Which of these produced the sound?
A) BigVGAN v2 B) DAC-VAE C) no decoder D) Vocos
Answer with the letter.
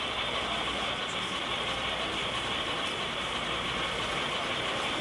A